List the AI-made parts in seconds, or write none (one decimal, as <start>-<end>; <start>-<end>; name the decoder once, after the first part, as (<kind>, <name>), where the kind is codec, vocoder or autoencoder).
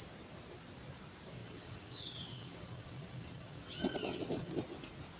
1.4-4.5 (vocoder, WaveNeXt)